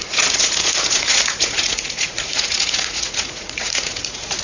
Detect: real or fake fake